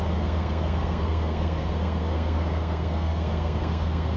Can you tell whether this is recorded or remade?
remade